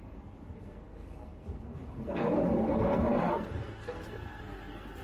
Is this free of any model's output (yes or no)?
no